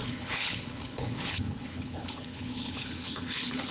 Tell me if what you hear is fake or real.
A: fake